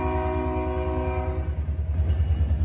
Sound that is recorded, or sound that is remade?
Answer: recorded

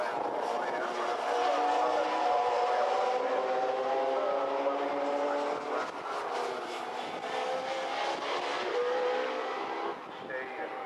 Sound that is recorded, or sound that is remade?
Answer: recorded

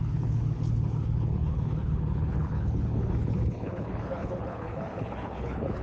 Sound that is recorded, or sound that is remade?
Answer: remade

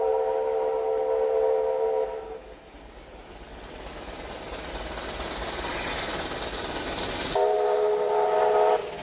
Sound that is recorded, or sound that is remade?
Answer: recorded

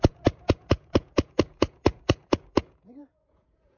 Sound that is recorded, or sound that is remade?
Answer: remade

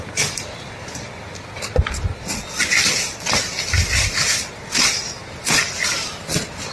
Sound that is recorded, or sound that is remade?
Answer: recorded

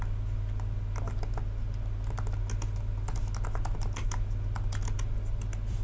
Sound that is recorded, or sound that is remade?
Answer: recorded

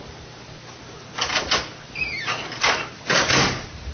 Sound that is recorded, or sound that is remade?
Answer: recorded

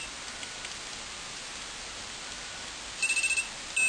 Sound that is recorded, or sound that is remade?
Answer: recorded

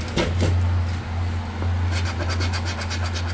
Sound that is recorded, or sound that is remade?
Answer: recorded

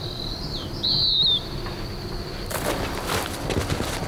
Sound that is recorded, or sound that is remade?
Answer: remade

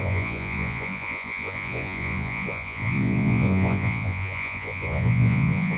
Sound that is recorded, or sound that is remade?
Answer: remade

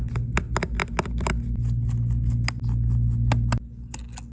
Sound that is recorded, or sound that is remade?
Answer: recorded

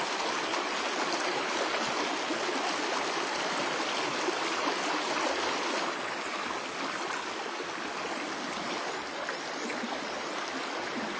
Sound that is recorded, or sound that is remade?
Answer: recorded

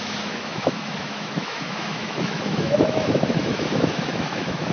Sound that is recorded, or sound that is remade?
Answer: remade